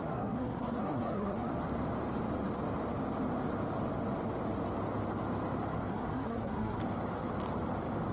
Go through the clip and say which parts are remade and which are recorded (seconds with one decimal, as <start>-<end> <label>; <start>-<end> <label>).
0.0-1.5 remade; 1.5-5.9 recorded; 5.9-6.8 remade; 6.8-8.1 recorded